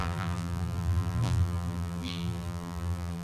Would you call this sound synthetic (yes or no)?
yes